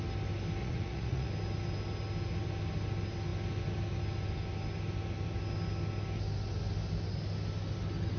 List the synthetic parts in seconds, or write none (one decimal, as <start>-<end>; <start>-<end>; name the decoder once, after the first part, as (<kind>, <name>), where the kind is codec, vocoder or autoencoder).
0.6-1.3 (vocoder, Vocos)